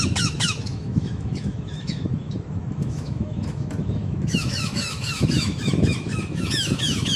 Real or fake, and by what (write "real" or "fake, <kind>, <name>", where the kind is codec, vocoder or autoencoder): fake, autoencoder, DAC-VAE